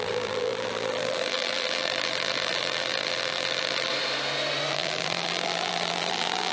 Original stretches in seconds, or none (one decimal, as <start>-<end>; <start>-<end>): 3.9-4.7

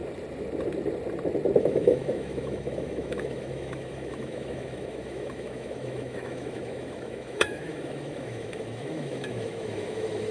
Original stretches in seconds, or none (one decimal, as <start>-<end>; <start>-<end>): 0.0-1.6

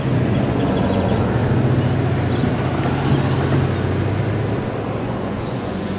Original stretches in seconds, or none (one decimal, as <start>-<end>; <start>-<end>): 1.4-5.0

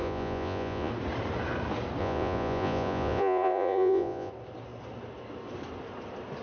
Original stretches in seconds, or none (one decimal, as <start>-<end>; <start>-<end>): 0.9-2.0; 4.3-6.4

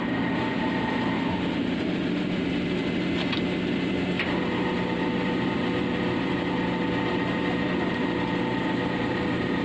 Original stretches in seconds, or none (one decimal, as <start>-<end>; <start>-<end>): 0.0-9.6

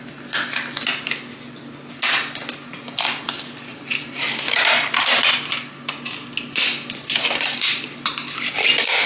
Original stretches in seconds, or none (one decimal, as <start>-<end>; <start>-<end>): 0.0-3.7; 4.5-9.1

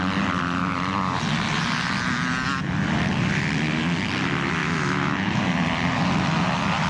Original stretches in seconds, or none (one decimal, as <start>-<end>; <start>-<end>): 0.0-4.6; 5.4-6.9

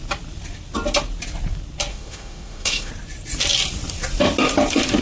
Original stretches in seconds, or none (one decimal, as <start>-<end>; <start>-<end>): 0.0-1.9; 2.9-5.0